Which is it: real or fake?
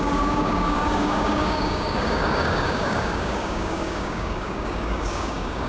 fake